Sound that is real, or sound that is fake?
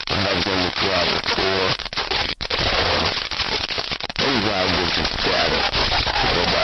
fake